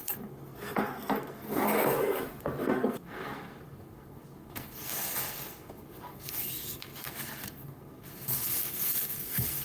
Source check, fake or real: fake